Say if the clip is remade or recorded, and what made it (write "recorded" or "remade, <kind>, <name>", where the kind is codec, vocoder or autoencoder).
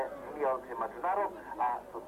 recorded